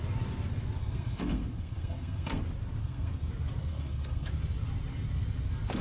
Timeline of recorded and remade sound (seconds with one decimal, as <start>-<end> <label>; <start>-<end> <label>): 0.0-0.8 recorded; 0.8-2.4 remade; 2.4-2.8 recorded; 2.8-3.3 remade; 3.3-3.7 recorded; 3.7-4.3 remade; 4.3-5.8 recorded